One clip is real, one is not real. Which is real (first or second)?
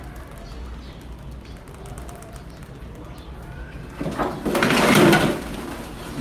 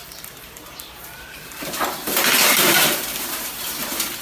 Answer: first